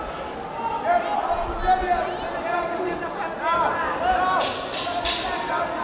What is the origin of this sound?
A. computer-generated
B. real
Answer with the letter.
B